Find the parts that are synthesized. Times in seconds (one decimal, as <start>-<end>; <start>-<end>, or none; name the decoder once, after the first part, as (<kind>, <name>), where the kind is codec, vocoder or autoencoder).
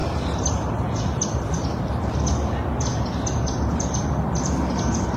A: none